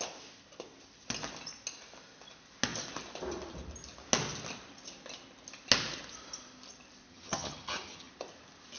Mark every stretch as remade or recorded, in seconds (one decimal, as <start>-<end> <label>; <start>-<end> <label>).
0.0-7.1 recorded; 7.1-8.1 remade; 8.1-8.8 recorded